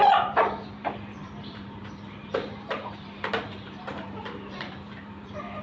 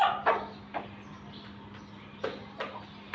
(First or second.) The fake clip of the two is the first